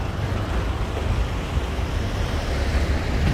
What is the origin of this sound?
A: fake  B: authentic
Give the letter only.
A